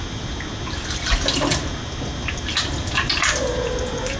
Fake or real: real